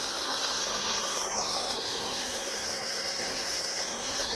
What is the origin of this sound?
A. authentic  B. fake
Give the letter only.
B